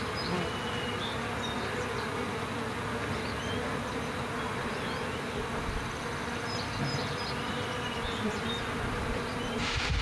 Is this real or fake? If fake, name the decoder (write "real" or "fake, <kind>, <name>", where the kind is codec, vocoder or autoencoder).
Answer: real